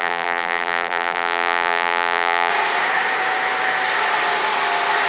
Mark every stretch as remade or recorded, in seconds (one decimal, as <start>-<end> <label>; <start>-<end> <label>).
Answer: 0.0-2.5 remade; 2.5-5.1 recorded